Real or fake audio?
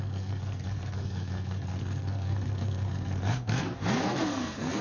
fake